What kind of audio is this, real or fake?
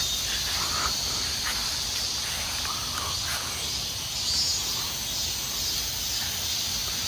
real